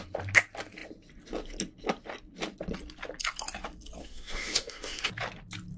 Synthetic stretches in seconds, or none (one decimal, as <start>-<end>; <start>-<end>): 4.0-5.1